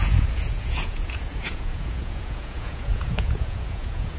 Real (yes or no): no